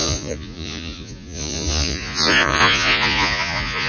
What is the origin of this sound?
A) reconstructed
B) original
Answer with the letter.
A